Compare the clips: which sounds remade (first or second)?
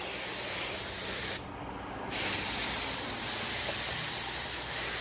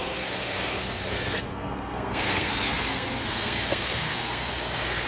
second